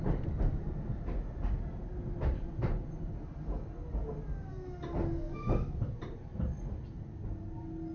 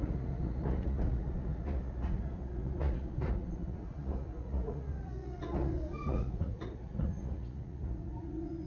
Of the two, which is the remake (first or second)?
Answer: second